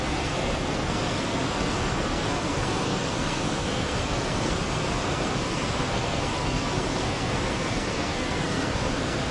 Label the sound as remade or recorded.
remade